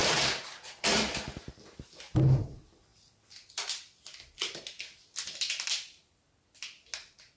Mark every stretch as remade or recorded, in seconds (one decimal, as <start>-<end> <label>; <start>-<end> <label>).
0.0-7.4 recorded